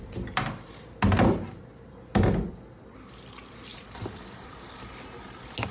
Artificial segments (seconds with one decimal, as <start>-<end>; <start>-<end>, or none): 3.7-4.6